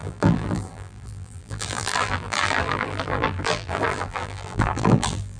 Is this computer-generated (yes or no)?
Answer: yes